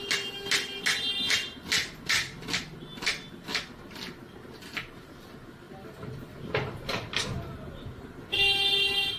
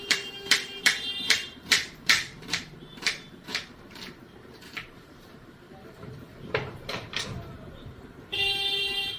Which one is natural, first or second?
first